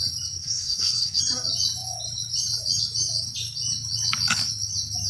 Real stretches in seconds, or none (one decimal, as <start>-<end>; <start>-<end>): 0.0-0.4; 1.2-5.1